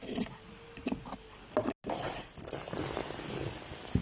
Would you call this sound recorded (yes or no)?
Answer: yes